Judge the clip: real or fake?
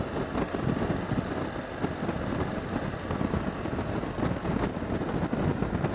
real